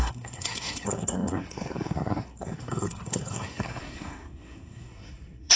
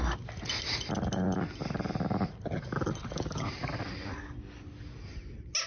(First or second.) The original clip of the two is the second